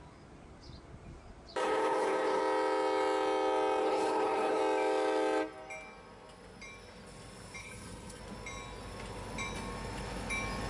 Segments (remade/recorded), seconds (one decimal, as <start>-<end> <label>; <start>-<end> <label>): 0.0-1.6 recorded; 1.6-2.4 remade; 2.4-3.8 recorded; 3.8-4.6 remade; 4.6-7.6 recorded; 7.6-8.2 remade; 8.2-10.7 recorded